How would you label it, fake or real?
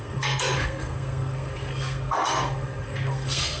fake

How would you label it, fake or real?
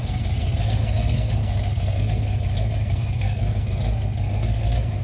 fake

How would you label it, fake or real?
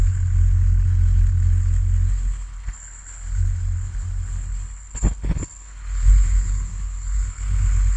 fake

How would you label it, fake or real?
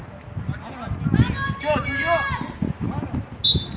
real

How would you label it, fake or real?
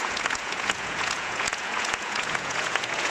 fake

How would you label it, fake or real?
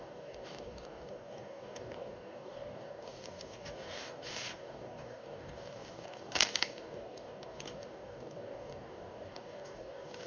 fake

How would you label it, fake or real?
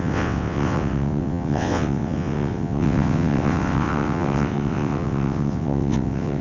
fake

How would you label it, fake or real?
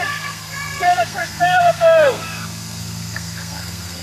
fake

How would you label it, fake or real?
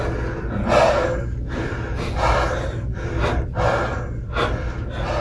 real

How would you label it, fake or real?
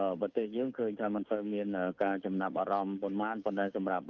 fake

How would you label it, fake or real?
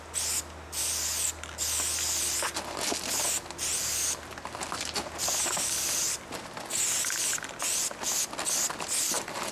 real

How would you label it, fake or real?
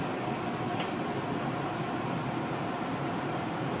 real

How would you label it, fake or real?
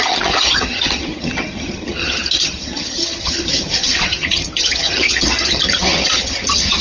fake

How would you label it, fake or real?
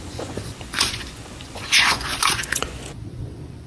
fake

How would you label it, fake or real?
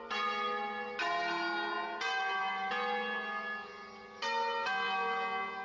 real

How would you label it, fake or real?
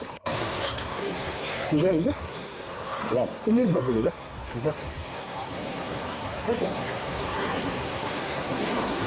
fake